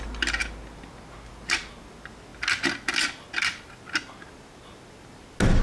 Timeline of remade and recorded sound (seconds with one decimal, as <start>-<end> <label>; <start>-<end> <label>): 0.0-5.6 recorded